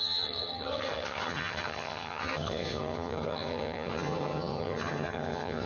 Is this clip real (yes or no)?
no